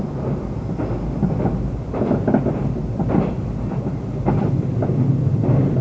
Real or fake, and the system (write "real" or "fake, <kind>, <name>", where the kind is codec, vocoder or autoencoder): real